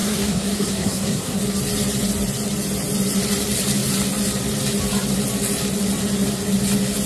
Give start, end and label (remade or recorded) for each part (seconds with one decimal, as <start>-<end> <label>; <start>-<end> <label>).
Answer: 0.0-1.4 remade; 1.4-7.1 recorded